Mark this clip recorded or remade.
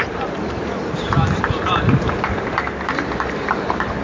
remade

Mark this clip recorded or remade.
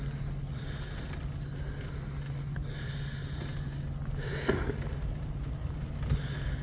recorded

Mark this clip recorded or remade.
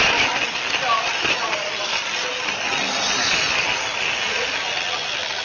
recorded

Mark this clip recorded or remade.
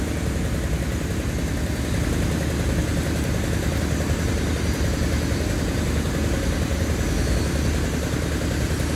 recorded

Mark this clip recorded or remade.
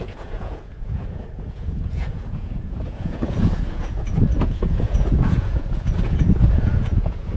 remade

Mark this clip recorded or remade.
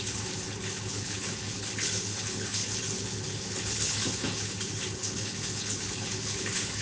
remade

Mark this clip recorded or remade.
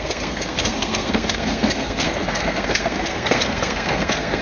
remade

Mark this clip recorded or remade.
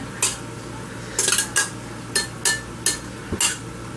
recorded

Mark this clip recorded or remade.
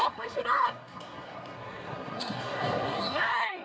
remade